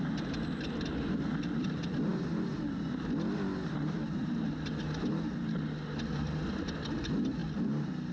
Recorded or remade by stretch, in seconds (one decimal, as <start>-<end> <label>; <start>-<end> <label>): 0.0-8.1 recorded